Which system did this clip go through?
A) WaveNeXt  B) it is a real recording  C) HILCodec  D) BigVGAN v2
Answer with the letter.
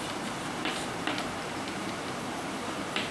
D